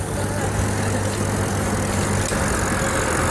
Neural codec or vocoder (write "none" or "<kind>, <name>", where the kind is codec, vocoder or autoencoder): none